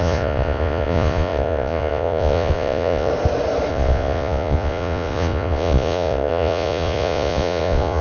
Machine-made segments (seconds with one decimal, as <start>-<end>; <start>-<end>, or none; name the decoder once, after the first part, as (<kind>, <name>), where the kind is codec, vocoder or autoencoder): 0.0-3.1 (vocoder, Vocos); 3.7-8.0